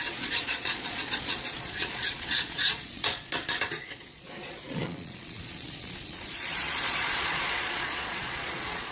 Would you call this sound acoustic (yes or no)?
no